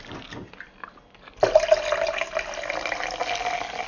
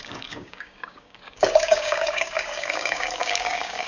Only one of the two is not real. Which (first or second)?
second